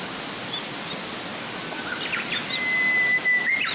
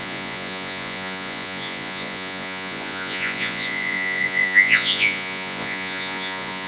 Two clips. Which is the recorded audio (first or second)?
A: first